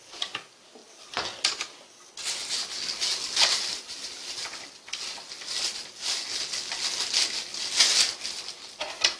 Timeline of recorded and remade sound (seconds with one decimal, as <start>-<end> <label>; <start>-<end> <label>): 0.0-9.2 recorded